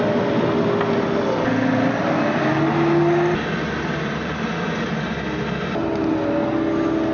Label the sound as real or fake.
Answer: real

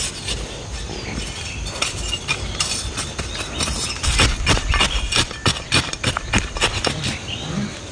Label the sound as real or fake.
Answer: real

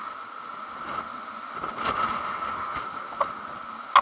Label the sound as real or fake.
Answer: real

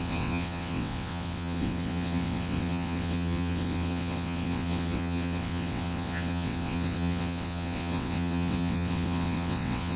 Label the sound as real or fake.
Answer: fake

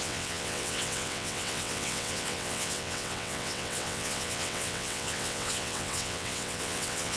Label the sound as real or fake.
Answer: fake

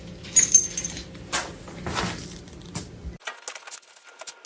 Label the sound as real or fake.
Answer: real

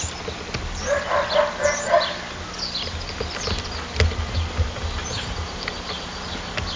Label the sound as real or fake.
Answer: real